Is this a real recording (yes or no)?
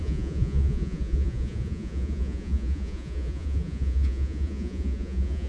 no